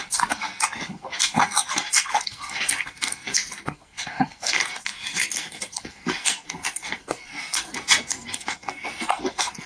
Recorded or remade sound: remade